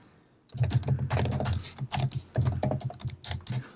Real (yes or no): yes